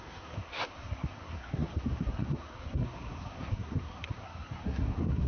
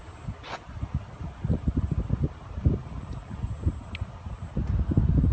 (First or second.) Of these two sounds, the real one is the second